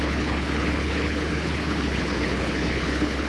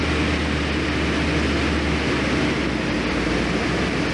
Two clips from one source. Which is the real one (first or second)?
second